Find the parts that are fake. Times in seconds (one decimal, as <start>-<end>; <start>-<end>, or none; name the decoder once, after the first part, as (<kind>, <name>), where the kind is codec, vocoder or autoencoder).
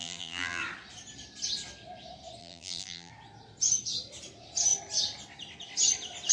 0.0-0.6 (vocoder, BigVGAN v2); 2.4-3.1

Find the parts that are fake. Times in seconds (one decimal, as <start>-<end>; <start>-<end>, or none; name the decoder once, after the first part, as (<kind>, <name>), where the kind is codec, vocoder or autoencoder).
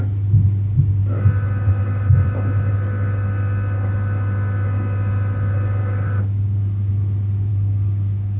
5.8-6.9 (codec, DAC); 7.5-8.4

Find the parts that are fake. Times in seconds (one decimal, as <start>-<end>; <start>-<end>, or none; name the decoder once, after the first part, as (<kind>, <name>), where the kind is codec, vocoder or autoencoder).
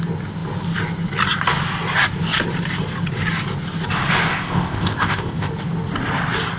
4.3-5.5 (codec, ZipCodec)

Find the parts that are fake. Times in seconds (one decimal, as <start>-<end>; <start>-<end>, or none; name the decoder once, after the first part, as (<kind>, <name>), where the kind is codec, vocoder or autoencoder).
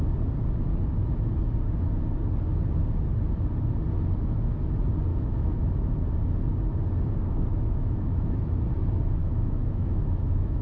5.1-6.0 (autoencoder, DAC-VAE); 7.5-8.6; 9.2-10.6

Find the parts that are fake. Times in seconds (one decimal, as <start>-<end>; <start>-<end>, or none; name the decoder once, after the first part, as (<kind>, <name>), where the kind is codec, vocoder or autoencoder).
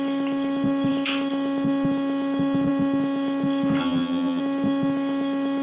3.8-4.4 (vocoder, HiFi-GAN)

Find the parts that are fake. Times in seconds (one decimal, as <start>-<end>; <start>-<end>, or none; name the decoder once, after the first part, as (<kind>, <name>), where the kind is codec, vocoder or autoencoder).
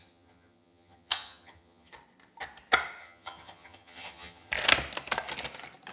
0.0-1.9 (vocoder, HiFi-GAN); 3.0-4.5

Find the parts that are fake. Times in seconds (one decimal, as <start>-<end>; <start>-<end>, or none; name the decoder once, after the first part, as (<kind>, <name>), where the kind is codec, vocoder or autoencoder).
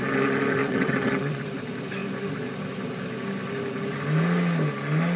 0.6-1.4 (vocoder, WaveNeXt)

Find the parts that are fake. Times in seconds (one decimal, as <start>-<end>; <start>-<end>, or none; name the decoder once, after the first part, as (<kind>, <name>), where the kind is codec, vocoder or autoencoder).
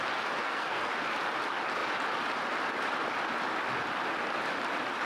0.4-0.9 (codec, SNAC)